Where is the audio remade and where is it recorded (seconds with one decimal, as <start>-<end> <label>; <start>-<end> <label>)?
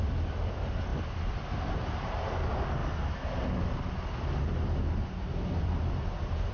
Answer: 0.0-6.5 recorded